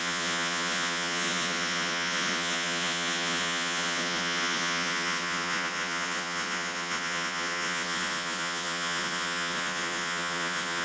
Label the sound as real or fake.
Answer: fake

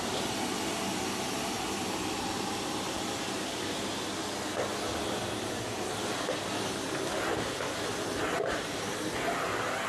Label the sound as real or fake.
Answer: real